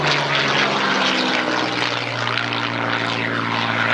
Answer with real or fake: real